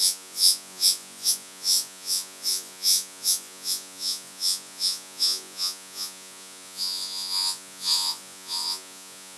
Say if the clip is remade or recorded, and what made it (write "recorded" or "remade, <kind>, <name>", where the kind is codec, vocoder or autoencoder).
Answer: remade, vocoder, Vocos